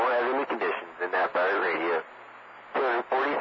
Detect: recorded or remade recorded